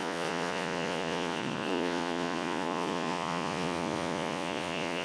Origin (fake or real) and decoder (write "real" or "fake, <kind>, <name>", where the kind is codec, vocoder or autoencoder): fake, vocoder, Vocos